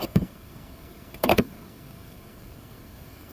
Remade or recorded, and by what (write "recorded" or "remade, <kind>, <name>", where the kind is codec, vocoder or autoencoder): remade, codec, SNAC